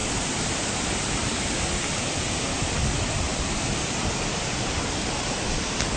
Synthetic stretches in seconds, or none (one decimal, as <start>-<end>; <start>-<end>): 0.0-1.4; 3.3-4.2